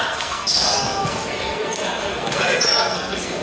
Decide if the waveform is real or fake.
fake